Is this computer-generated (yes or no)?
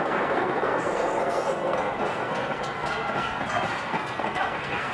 yes